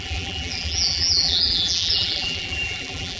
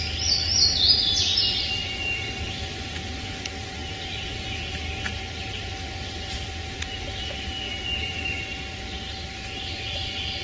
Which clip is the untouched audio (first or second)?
second